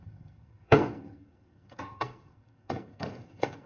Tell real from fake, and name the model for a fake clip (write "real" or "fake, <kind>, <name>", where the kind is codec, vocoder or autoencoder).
fake, codec, SNAC